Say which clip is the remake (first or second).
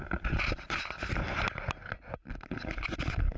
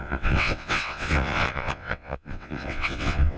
second